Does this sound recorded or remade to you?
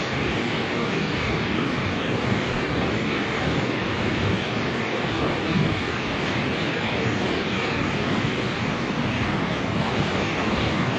remade